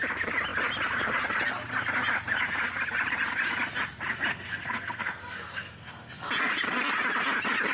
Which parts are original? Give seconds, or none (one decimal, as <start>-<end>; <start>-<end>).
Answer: 0.0-4.3; 6.1-7.7